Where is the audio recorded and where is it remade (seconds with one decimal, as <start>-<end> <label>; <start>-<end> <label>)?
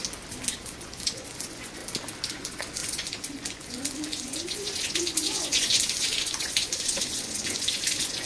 0.0-0.6 recorded; 0.6-1.8 remade; 1.8-2.3 recorded; 2.3-8.3 remade